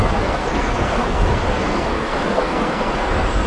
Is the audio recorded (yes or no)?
no